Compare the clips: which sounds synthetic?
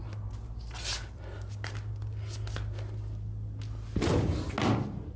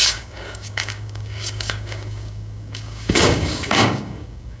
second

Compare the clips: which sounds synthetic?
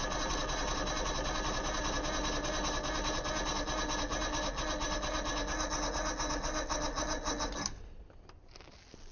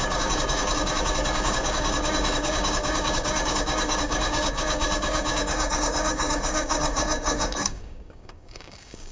second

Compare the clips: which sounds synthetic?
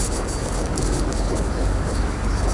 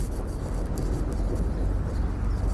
first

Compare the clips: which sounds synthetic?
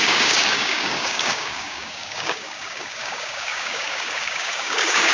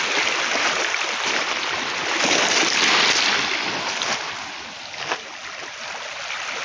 first